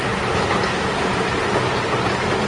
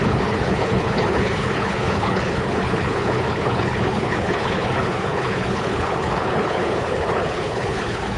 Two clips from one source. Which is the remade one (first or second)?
second